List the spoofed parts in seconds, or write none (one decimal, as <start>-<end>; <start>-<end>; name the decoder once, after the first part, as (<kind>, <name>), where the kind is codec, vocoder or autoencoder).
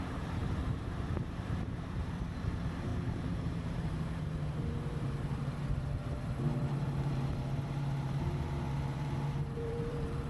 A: 0.0-10.3 (vocoder, BigVGAN v2)